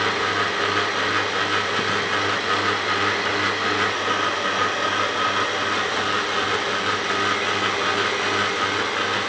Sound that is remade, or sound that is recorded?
recorded